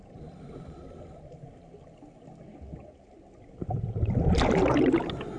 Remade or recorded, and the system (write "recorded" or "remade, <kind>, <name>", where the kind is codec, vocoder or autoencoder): recorded